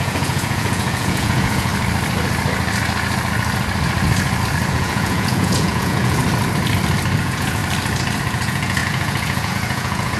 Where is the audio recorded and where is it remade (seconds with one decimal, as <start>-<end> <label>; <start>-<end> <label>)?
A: 0.0-1.7 remade; 1.7-4.7 recorded; 4.7-6.2 remade; 6.2-7.1 recorded; 7.1-7.6 remade; 7.6-8.2 recorded; 8.2-10.2 remade